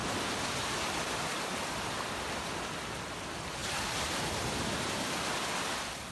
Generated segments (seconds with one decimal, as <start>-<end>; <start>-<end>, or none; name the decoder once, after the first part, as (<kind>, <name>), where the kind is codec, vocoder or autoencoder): none